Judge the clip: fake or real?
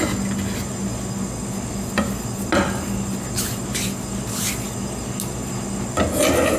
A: real